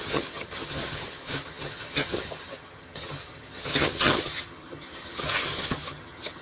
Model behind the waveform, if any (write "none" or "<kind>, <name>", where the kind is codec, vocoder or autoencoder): vocoder, HiFi-GAN